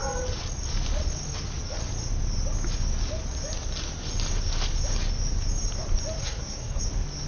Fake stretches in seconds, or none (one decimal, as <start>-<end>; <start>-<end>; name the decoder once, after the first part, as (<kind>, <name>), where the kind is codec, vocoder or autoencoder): 6.2-6.8 (codec, SNAC)

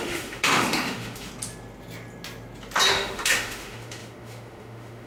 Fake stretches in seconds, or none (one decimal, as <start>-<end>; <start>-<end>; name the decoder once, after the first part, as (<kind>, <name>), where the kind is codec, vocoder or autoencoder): 0.0-1.3 (autoencoder, DAC-VAE); 2.9-5.1

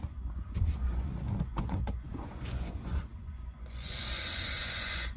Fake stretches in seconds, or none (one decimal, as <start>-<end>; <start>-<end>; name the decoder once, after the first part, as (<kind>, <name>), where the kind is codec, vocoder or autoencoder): 0.0-5.2 (vocoder, Vocos)

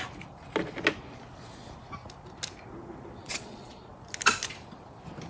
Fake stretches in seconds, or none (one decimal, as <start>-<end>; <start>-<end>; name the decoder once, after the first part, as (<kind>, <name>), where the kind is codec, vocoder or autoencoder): 3.2-3.9 (vocoder, Vocos)